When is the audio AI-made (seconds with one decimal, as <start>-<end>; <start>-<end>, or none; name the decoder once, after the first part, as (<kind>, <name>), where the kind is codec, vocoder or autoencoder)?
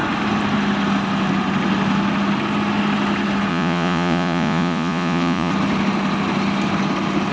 3.5-5.5 (vocoder, Vocos)